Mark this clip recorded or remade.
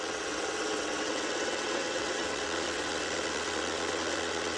remade